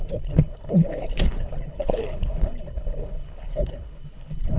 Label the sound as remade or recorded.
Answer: remade